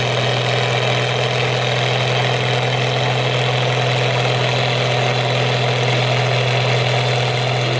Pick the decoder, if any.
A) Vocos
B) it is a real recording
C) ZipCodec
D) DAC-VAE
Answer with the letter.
B